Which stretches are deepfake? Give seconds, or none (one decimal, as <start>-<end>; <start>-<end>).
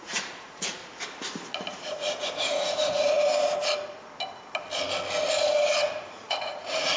0.0-0.8; 1.5-3.3; 5.9-7.0